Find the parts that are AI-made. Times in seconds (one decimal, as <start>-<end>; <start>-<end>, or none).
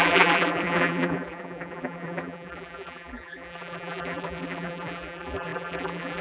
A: 0.0-6.2